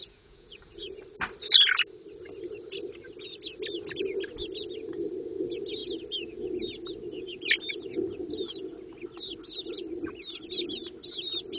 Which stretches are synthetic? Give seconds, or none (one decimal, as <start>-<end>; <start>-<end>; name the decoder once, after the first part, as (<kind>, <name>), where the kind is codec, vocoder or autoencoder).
0.0-1.0 (vocoder, Vocos)